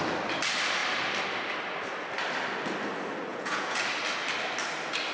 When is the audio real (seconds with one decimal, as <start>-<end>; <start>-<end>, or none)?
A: 0.0-3.3; 3.8-5.1